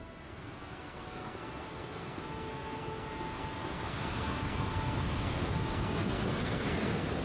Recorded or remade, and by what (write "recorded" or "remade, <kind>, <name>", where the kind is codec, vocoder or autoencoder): remade, codec, SNAC